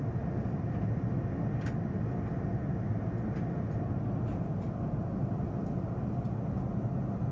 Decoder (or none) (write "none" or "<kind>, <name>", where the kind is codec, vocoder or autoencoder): none